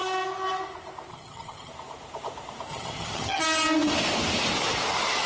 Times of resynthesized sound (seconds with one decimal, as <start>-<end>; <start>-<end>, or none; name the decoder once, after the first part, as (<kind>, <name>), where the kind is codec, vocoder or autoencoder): 1.1-1.7 (vocoder, HiFi-GAN); 2.7-3.4